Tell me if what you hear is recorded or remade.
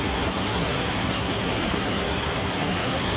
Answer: remade